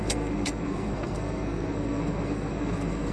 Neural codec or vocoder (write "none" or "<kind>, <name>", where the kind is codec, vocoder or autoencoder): codec, SNAC